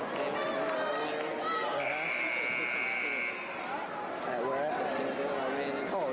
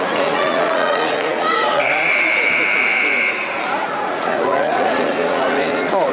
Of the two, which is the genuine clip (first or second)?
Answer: first